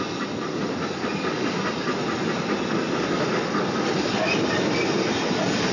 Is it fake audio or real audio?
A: real